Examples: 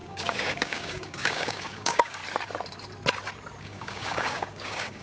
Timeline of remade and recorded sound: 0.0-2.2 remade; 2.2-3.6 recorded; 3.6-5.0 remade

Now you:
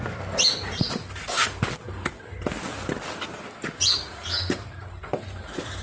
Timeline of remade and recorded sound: 0.0-5.8 recorded

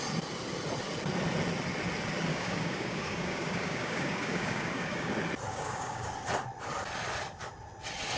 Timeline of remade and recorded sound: 0.0-2.3 recorded; 2.3-5.1 remade; 5.1-5.5 recorded; 5.5-6.1 remade; 6.1-8.2 recorded

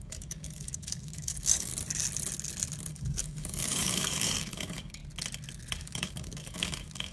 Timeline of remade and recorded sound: 0.0-1.7 remade; 1.7-2.9 recorded; 2.9-5.0 remade; 5.0-5.8 recorded; 5.8-7.1 remade

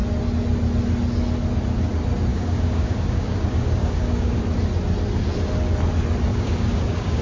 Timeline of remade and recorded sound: 0.0-2.3 recorded; 2.3-4.4 remade; 4.4-6.3 recorded; 6.3-7.2 remade

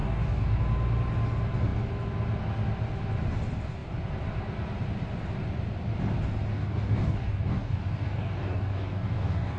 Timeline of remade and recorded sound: 0.0-0.6 remade; 0.6-6.5 recorded; 6.5-9.6 remade